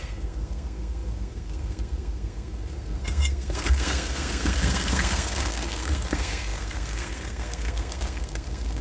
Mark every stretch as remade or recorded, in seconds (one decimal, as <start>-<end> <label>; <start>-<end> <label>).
0.0-8.8 remade